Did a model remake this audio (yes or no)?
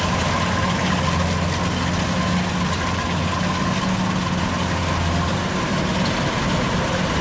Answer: no